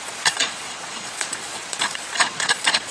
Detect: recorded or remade remade